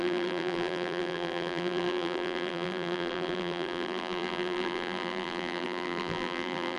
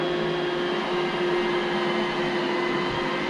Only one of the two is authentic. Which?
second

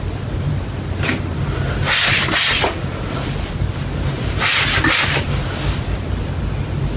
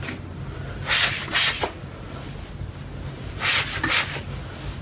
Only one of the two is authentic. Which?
second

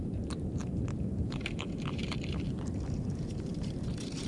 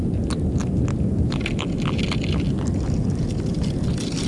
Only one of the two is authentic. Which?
second